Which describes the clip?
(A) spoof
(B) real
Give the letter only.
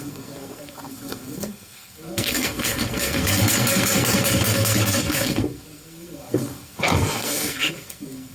A